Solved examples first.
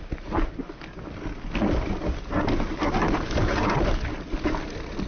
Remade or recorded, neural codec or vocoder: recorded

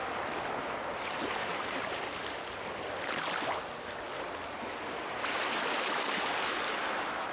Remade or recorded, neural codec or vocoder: recorded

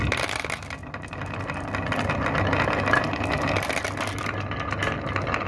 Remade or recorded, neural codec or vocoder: recorded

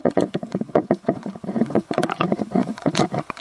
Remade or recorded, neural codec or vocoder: remade, vocoder, Vocos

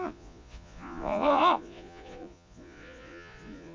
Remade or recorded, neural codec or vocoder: remade, vocoder, Vocos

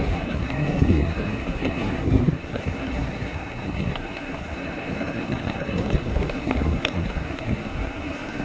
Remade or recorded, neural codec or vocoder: remade, codec, SNAC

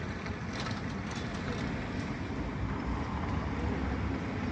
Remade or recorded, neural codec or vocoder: recorded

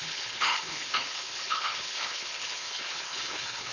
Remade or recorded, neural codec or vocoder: remade, codec, HILCodec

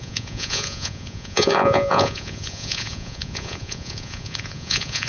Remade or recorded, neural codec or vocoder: remade, vocoder, Vocos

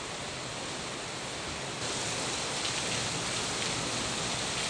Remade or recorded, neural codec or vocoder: recorded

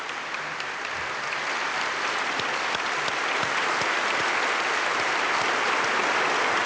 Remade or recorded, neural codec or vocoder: recorded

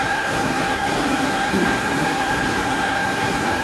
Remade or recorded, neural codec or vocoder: remade, codec, SNAC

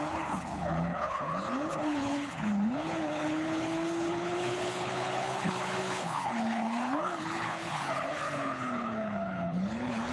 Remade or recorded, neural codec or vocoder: remade, codec, HILCodec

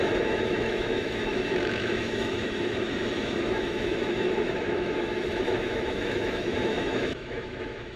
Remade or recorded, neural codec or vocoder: remade, autoencoder, DAC-VAE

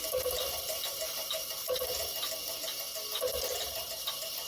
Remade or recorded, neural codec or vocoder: remade, vocoder, BigVGAN v2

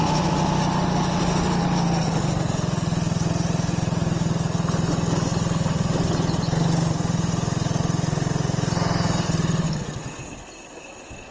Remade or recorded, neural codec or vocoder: recorded